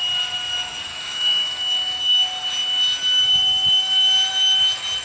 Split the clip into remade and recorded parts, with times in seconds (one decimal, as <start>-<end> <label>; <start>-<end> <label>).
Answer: 0.0-0.9 recorded; 0.9-2.0 remade; 2.0-5.0 recorded